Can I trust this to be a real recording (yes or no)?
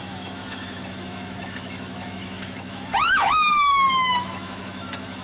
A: no